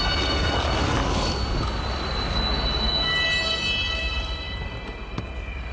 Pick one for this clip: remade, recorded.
recorded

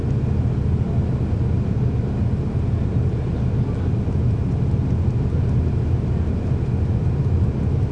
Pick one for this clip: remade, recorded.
recorded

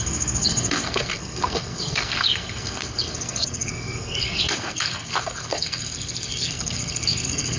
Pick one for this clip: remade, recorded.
remade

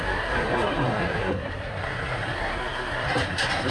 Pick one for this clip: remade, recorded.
remade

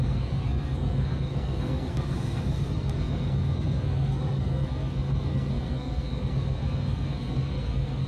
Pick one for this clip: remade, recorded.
remade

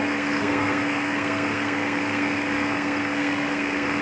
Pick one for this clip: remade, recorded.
remade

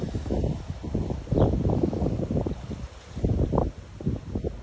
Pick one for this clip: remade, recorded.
recorded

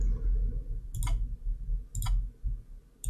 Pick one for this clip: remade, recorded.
recorded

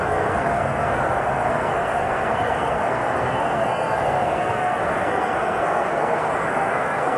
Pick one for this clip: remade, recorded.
remade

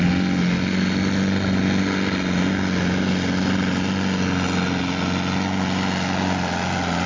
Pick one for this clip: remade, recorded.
recorded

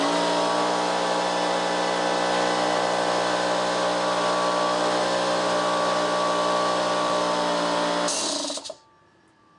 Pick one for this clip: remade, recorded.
recorded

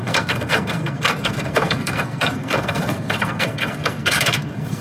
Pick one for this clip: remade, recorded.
remade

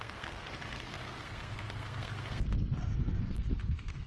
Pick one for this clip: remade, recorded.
remade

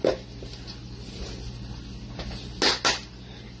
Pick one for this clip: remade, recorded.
recorded